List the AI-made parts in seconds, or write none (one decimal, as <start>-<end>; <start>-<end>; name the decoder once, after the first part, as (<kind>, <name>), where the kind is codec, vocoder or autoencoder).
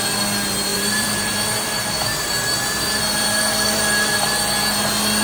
0.7-3.8 (vocoder, BigVGAN v2)